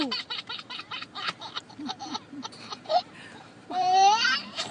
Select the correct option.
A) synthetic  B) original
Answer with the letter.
A